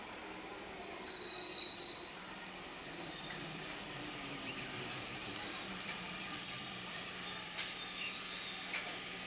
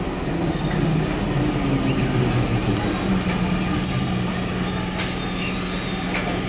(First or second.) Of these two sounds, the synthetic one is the first